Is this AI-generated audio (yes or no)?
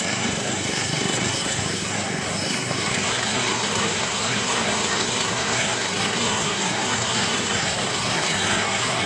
yes